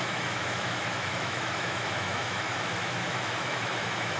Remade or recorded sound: remade